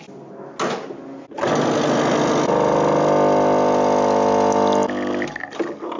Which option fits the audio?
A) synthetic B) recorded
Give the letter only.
B